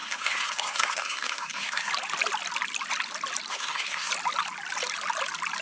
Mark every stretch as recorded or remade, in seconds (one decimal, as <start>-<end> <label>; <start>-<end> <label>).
0.0-1.9 remade; 1.9-3.5 recorded; 3.5-4.1 remade; 4.1-5.6 recorded